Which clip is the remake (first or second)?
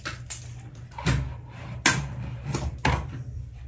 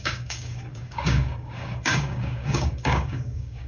second